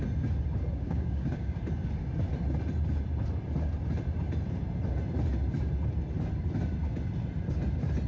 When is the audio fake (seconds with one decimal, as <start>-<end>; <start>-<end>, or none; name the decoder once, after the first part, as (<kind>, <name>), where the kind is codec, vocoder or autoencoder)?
0.7-1.6 (codec, DAC)